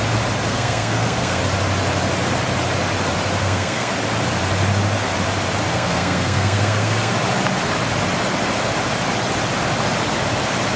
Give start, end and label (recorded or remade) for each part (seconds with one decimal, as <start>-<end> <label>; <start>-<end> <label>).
0.0-0.5 recorded; 0.5-1.4 remade; 1.4-3.4 recorded; 3.4-3.9 remade; 3.9-5.7 recorded; 5.7-7.1 remade; 7.1-10.8 recorded